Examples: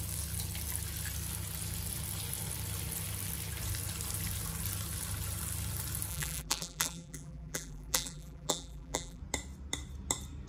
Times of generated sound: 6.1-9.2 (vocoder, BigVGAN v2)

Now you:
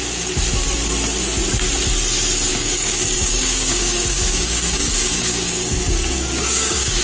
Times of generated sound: 2.5-7.0 (codec, DAC)

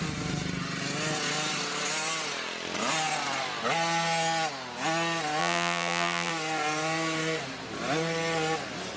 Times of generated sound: 5.4-6.3 (vocoder, BigVGAN v2)

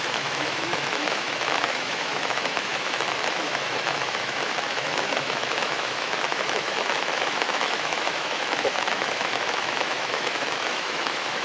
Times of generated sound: 0.0-11.4 (autoencoder, DAC-VAE)

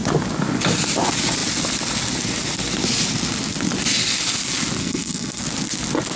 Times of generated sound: 4.8-5.4 (codec, SNAC)